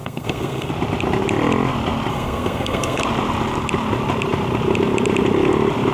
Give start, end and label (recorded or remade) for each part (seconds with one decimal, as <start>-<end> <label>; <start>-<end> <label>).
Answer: 0.0-0.7 remade; 0.7-2.1 recorded; 2.1-3.0 remade; 3.0-5.9 recorded